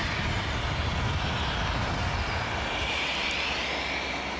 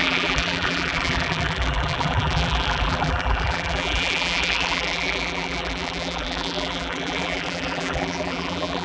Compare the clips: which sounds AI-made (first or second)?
second